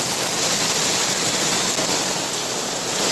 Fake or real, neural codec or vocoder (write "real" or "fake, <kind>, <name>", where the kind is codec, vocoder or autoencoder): real